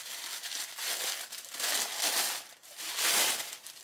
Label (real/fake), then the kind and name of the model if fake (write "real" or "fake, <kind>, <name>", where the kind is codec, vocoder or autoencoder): real